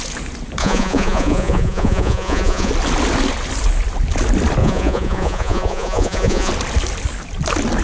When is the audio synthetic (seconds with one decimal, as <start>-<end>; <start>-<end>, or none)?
0.6-2.7; 4.6-6.5